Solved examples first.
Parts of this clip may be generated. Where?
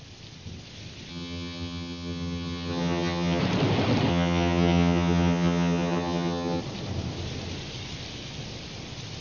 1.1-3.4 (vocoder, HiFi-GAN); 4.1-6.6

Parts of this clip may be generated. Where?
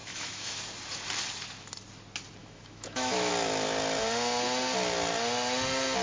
0.0-0.6 (autoencoder, DAC-VAE); 2.4-3.3